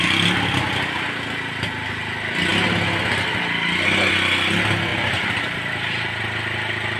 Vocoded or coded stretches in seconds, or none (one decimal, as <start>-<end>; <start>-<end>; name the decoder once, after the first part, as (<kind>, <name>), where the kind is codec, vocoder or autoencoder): 4.9-6.2 (vocoder, BigVGAN v2)